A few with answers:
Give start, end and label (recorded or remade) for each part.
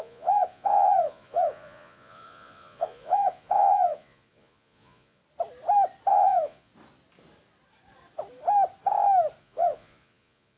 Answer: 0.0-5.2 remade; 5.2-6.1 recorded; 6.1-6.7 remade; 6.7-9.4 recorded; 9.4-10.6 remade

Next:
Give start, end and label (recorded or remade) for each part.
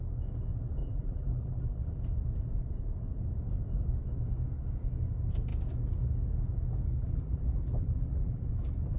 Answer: 0.0-0.8 recorded; 0.8-2.0 remade; 2.0-7.0 recorded; 7.0-8.4 remade; 8.4-9.0 recorded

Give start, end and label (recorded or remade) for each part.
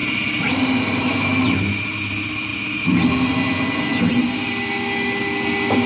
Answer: 0.0-5.9 recorded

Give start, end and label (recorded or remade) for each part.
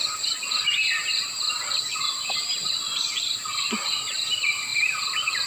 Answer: 0.0-5.5 recorded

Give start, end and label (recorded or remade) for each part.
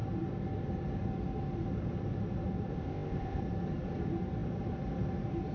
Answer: 0.0-2.7 recorded; 2.7-3.4 remade; 3.4-5.5 recorded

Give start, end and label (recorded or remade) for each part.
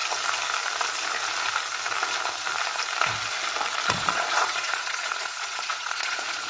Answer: 0.0-3.9 recorded; 3.9-6.5 remade